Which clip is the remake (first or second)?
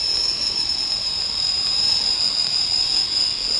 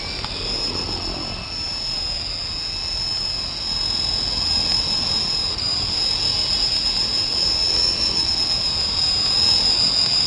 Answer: first